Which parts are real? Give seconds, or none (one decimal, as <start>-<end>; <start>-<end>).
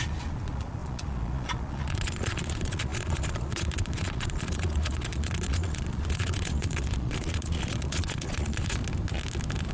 8.8-9.7